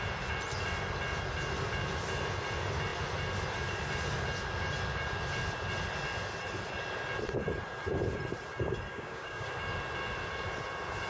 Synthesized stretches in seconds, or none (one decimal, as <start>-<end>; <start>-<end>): 8.9-9.5